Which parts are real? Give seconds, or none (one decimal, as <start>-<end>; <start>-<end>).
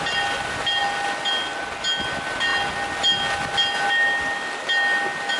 0.0-5.4